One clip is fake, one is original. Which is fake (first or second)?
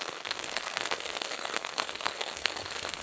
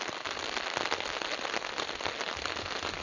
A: first